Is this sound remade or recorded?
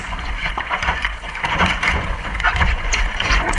remade